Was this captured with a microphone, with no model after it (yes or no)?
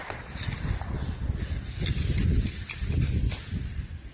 yes